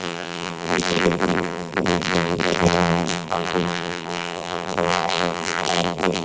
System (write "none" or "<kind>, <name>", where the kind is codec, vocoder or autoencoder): vocoder, BigVGAN v2